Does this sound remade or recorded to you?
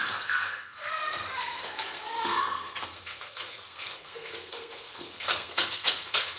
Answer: remade